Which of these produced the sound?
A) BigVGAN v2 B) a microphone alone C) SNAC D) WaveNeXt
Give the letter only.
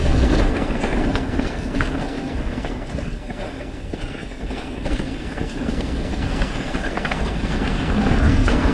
C